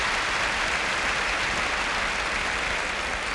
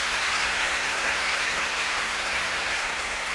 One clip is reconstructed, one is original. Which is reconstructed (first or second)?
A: second